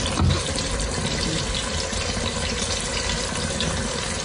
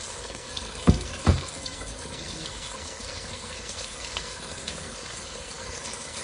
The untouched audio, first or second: first